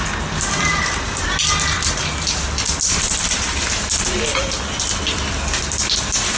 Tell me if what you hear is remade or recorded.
recorded